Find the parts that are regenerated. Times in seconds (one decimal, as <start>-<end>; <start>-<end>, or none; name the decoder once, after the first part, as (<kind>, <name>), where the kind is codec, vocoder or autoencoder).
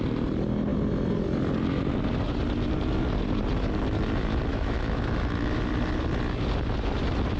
4.5-5.6 (autoencoder, DAC-VAE)